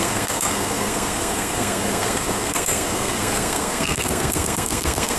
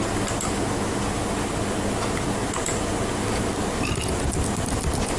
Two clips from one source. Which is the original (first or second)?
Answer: second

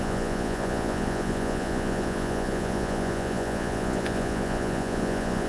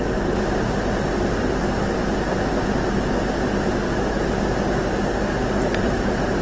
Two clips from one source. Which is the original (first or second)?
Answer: second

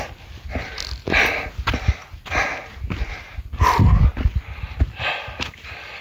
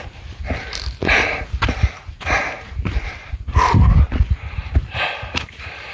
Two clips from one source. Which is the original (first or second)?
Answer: first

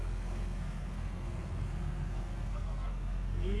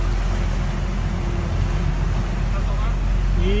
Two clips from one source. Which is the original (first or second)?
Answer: second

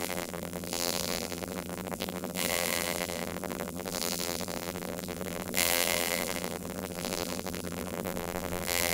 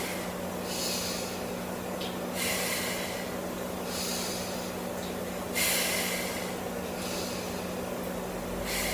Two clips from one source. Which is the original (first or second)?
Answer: second